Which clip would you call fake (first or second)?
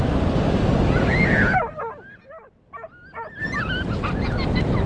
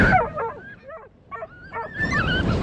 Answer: second